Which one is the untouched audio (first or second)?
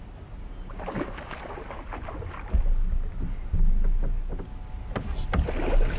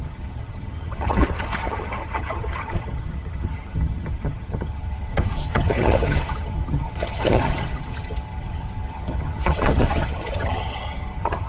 first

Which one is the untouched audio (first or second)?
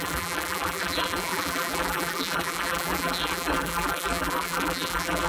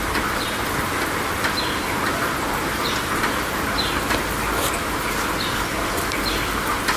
second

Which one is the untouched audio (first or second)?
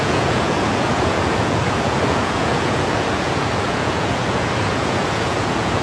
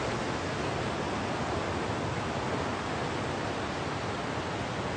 second